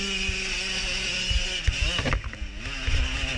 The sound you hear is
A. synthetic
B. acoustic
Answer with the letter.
B